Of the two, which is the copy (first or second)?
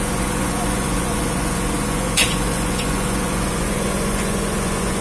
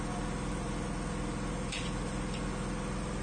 first